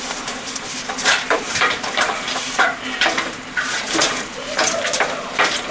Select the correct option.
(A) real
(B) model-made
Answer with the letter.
B